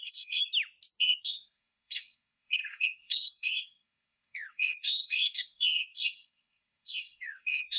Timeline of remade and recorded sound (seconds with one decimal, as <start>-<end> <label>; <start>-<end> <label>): 0.0-0.4 remade; 0.4-1.0 recorded; 1.0-7.8 remade